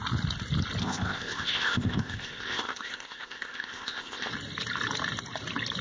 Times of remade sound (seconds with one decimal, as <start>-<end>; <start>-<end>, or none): 0.8-4.3